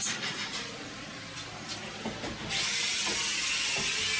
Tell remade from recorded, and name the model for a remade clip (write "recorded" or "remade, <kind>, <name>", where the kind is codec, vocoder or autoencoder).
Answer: recorded